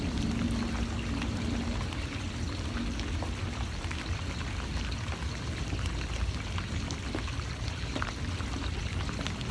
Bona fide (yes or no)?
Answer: yes